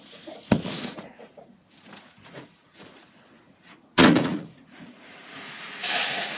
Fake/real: fake